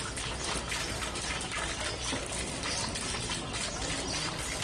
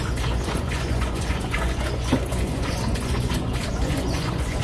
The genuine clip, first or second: first